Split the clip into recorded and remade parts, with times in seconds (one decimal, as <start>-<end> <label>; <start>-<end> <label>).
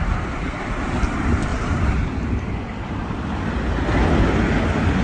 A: 0.0-5.0 recorded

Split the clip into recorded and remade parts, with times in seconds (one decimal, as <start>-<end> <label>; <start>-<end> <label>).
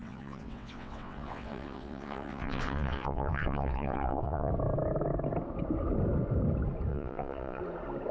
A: 0.0-4.5 remade; 4.5-6.9 recorded; 6.9-7.6 remade; 7.6-8.1 recorded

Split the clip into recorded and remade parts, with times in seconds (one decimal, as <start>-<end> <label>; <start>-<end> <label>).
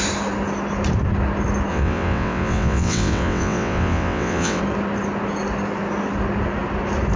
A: 0.0-1.7 recorded; 1.7-4.6 remade; 4.6-7.2 recorded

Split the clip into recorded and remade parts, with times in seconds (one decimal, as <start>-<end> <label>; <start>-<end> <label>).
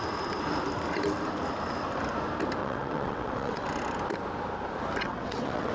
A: 0.0-2.6 recorded; 2.6-3.7 remade; 3.7-5.0 recorded; 5.0-5.7 remade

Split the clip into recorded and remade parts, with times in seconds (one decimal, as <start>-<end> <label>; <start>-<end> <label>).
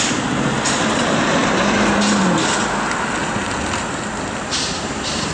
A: 0.0-5.3 recorded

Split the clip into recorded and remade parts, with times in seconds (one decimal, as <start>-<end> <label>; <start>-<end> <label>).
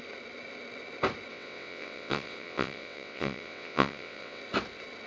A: 0.0-1.3 recorded; 1.3-4.4 remade; 4.4-5.1 recorded